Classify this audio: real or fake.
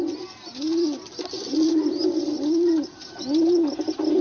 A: real